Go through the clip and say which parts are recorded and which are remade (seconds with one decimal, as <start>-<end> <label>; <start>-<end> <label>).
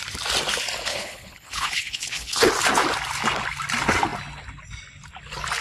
0.0-0.9 recorded; 0.9-2.5 remade; 2.5-5.6 recorded